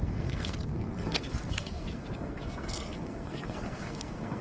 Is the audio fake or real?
fake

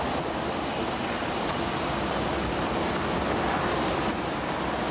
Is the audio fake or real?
real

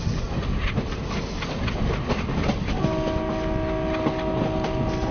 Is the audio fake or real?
real